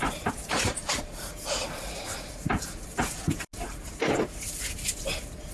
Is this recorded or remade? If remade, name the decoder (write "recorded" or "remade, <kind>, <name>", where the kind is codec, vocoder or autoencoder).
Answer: recorded